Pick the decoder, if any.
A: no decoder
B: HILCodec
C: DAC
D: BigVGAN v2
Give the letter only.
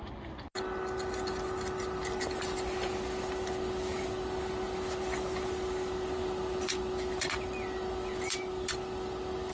A